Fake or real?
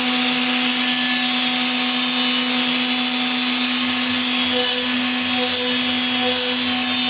real